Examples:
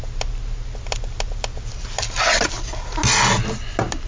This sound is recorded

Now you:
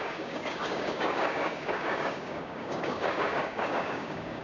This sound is remade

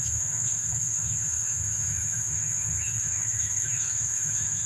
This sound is remade